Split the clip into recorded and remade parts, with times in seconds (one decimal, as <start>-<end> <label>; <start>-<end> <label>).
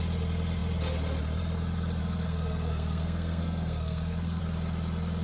0.0-2.0 recorded; 2.0-4.4 remade; 4.4-5.2 recorded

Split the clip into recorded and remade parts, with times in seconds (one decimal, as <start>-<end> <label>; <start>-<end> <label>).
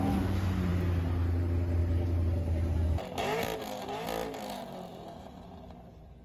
0.0-6.2 recorded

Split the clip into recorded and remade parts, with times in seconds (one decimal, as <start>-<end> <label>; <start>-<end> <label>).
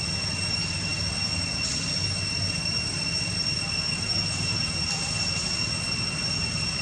0.0-6.8 recorded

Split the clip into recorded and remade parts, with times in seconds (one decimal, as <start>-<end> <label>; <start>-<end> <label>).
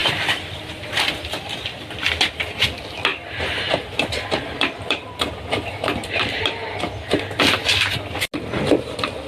0.0-1.8 remade; 1.8-3.1 recorded; 3.1-7.4 remade; 7.4-9.3 recorded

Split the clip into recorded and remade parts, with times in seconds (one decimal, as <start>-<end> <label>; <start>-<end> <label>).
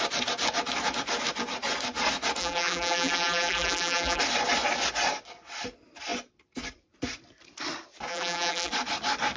0.0-2.4 recorded; 2.4-4.2 remade; 4.2-8.1 recorded; 8.1-8.7 remade; 8.7-9.4 recorded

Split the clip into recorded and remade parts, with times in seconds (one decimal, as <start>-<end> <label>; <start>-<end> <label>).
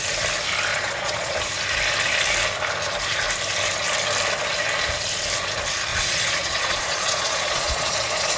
0.0-0.7 recorded; 0.7-1.4 remade; 1.4-5.9 recorded; 5.9-8.4 remade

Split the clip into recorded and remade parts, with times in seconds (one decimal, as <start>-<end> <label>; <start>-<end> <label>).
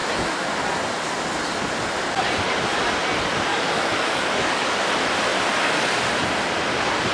0.0-3.5 recorded; 3.5-4.8 remade; 4.8-7.1 recorded